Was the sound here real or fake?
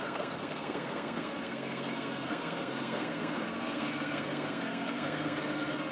fake